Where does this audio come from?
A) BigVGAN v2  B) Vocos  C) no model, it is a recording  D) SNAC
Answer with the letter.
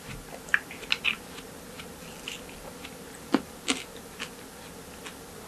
C